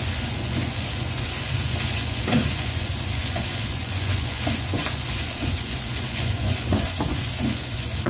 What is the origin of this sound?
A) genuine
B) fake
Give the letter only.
B